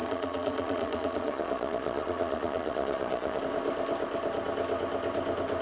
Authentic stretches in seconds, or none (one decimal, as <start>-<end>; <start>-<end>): 3.4-5.6